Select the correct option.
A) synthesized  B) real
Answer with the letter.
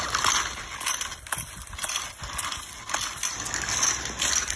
B